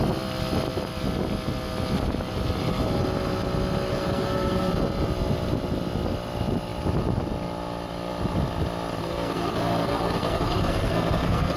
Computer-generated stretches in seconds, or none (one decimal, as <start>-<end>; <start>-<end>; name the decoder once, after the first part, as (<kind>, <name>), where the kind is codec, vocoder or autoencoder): 3.9-4.7 (codec, SNAC); 9.0-11.6